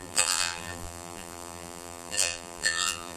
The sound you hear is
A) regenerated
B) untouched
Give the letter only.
A